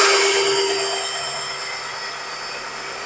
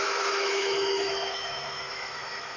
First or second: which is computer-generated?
second